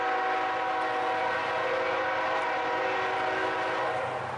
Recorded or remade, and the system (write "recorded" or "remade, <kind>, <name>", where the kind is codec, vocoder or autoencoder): recorded